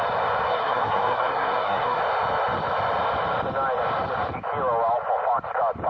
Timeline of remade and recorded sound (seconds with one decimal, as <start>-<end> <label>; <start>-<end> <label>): 0.0-0.5 recorded; 0.5-2.0 remade; 2.0-5.9 recorded